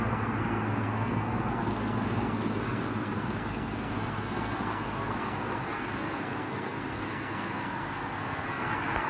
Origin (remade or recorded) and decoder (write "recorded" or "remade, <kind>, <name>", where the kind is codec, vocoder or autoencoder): remade, codec, SNAC